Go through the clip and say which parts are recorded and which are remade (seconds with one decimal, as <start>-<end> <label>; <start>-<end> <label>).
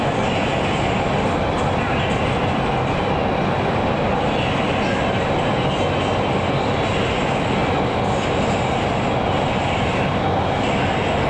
0.0-11.3 recorded